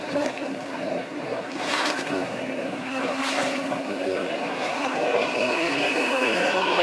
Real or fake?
fake